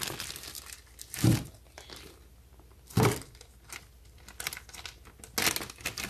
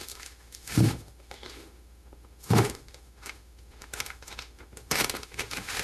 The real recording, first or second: first